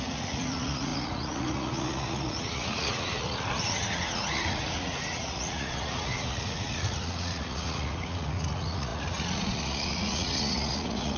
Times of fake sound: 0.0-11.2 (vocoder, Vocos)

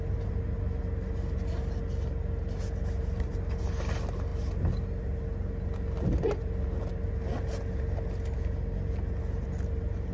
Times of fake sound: none

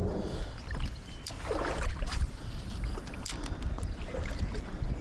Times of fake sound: 0.0-3.0 (vocoder, BigVGAN v2)

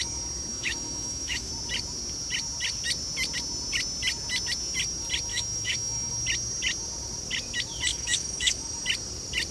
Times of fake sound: 0.5-1.5 (autoencoder, DAC-VAE); 5.3-6.1; 7.9-8.6

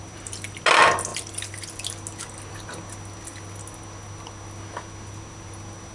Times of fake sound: none